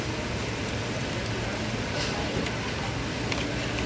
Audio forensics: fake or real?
real